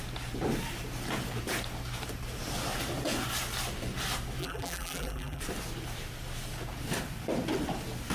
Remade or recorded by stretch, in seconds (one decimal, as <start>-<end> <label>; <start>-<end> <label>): 0.0-4.4 recorded; 4.4-5.4 remade; 5.4-8.1 recorded